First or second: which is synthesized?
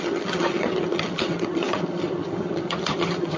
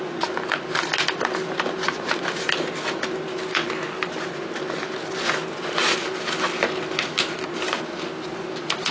first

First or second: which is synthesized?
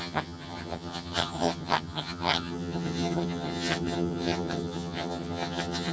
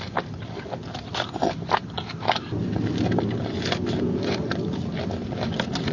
first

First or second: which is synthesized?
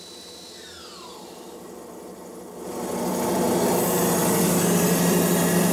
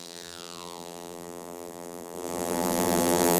second